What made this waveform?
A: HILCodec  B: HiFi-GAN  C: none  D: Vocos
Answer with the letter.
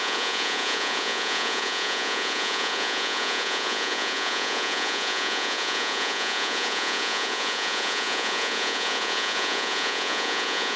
D